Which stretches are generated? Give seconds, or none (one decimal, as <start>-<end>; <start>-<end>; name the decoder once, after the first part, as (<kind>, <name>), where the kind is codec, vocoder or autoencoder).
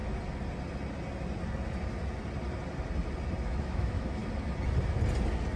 3.4-4.2 (autoencoder, DAC-VAE)